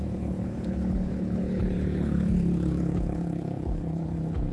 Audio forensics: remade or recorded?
remade